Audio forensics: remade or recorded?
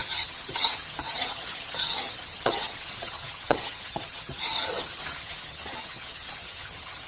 remade